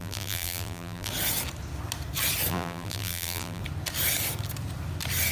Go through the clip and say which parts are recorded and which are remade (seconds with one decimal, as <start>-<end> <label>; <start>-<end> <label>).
0.0-1.1 remade; 1.1-2.5 recorded; 2.5-3.6 remade; 3.6-5.3 recorded